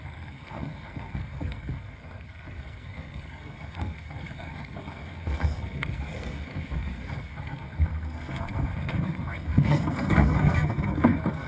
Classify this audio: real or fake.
fake